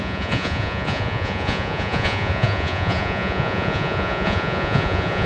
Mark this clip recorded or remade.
remade